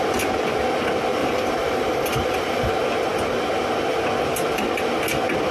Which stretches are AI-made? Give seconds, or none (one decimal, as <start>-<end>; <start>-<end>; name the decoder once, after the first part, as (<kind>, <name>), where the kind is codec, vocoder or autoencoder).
1.2-2.7 (vocoder, BigVGAN v2)